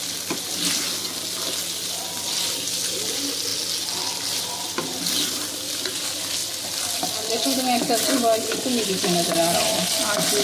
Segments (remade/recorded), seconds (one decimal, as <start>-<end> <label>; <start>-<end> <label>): 0.0-10.4 recorded